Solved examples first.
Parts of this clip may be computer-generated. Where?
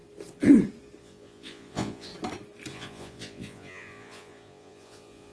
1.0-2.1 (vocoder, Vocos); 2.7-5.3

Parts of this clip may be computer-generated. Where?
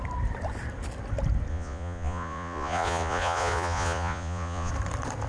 1.5-4.7 (vocoder, Vocos)